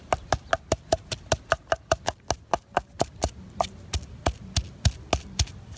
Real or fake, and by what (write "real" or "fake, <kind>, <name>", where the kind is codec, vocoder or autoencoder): real